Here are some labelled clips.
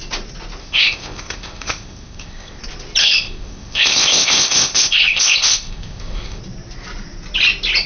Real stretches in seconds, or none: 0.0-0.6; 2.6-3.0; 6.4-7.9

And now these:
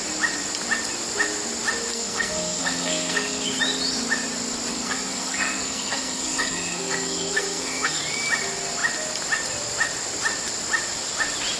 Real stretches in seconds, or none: 0.0-1.9; 3.6-4.7; 8.0-11.6

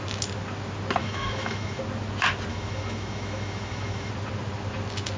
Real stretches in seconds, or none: 0.0-1.0; 1.8-2.5; 4.1-5.2

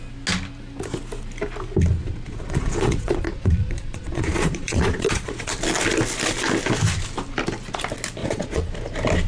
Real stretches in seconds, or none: 0.0-2.0; 5.5-8.2; 8.7-9.3

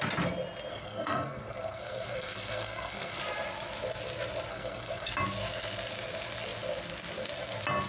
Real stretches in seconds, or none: 0.0-0.7; 3.2-4.5; 5.1-7.9

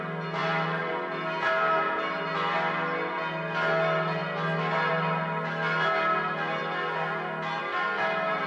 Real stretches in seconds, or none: 0.0-0.4; 0.9-8.5